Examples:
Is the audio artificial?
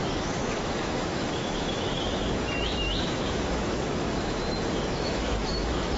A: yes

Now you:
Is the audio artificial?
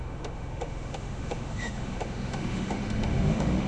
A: yes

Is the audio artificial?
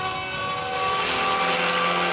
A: no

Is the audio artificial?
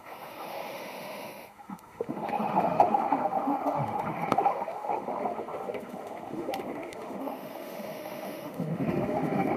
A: yes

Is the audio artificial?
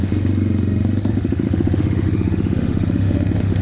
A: yes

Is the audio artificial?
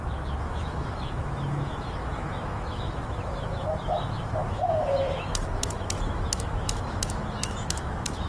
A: yes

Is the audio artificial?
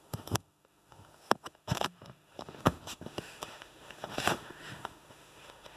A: yes